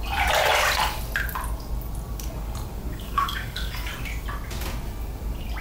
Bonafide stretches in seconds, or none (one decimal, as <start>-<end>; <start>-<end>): 0.0-2.9; 3.9-5.6